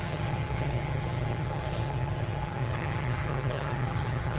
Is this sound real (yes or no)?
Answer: no